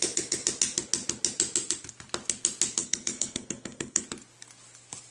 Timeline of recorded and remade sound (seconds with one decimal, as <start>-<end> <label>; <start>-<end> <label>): 0.0-2.8 recorded; 2.8-4.0 remade; 4.0-5.1 recorded